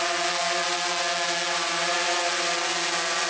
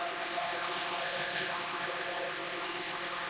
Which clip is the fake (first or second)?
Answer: second